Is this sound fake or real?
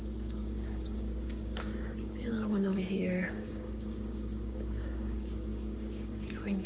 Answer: fake